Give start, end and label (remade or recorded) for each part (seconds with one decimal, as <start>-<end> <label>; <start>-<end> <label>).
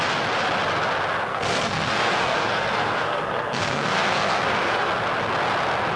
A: 0.0-1.3 recorded; 1.3-4.9 remade; 4.9-6.0 recorded